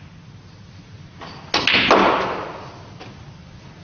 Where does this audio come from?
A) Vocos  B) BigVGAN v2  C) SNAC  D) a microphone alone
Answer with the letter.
D